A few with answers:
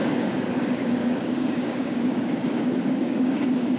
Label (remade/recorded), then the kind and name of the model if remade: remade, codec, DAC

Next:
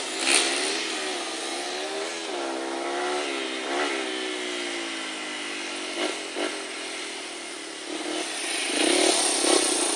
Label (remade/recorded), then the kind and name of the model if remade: recorded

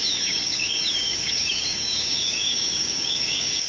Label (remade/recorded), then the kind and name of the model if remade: remade, codec, DAC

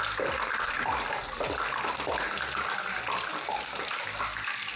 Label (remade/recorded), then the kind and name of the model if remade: recorded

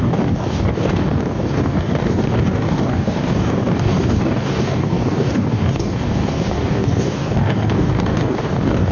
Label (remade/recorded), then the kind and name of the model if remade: remade, codec, DAC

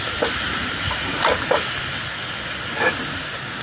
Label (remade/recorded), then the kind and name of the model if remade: recorded